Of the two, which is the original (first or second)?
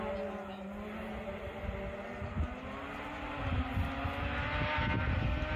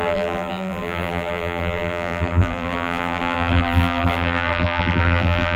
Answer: first